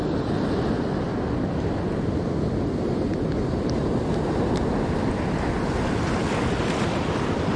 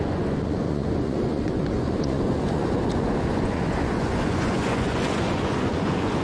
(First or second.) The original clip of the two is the first